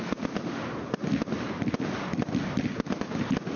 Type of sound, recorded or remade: recorded